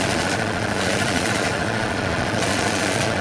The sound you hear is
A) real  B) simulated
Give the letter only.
B